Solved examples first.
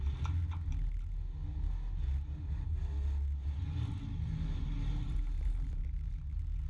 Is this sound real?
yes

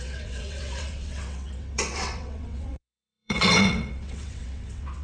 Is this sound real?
no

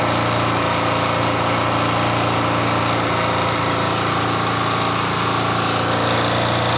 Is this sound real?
yes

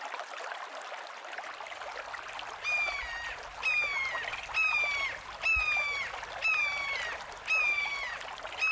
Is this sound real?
yes